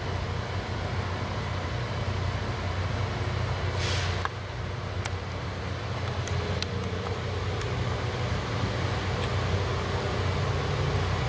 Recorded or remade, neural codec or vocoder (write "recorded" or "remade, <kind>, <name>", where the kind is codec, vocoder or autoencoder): recorded